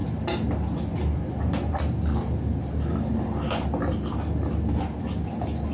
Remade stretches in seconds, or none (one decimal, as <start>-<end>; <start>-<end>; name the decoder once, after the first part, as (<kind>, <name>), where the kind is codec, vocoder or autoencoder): none